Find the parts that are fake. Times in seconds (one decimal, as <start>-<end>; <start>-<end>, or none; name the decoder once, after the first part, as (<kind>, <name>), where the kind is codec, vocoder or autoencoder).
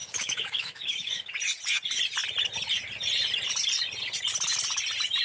0.0-1.3 (autoencoder, DAC-VAE)